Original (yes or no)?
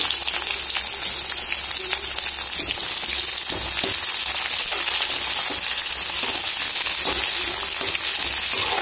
yes